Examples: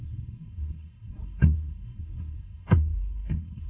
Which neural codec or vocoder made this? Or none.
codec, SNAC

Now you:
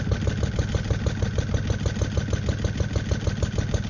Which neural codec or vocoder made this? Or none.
none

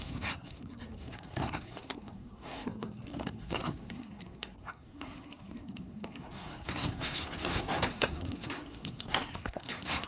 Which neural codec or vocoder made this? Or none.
codec, SNAC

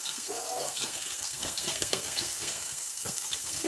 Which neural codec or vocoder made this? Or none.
codec, SNAC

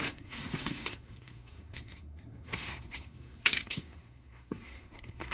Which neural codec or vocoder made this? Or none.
codec, SNAC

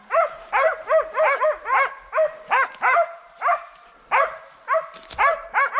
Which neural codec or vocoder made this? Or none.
none